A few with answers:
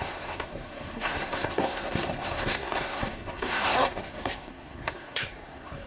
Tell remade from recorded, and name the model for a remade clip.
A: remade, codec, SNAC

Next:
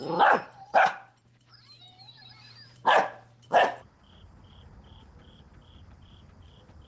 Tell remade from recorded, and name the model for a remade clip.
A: remade, vocoder, BigVGAN v2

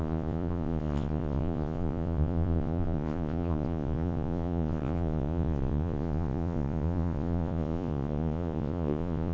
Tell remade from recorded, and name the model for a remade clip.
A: remade, vocoder, Vocos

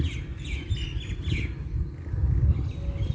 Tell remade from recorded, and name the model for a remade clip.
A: recorded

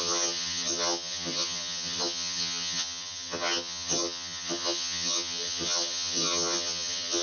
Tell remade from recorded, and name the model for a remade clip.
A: remade, vocoder, HiFi-GAN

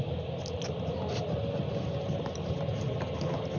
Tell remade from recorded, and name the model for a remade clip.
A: recorded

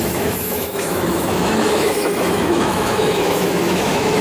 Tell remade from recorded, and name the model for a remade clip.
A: remade, autoencoder, DAC-VAE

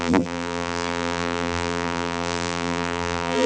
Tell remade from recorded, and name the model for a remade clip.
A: remade, vocoder, BigVGAN v2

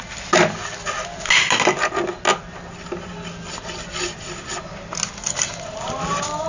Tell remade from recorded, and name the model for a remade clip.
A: recorded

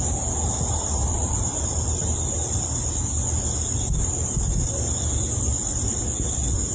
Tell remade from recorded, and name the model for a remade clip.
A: recorded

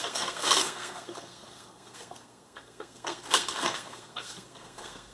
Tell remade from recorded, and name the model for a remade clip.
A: remade, codec, SNAC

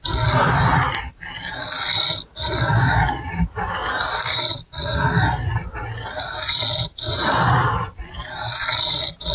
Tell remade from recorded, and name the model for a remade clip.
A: recorded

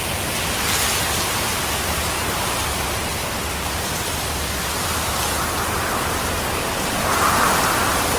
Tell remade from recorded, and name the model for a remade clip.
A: recorded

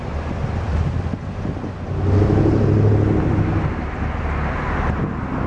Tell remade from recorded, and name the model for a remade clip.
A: recorded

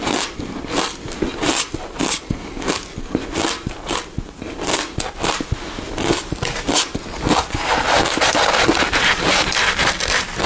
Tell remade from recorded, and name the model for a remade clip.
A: recorded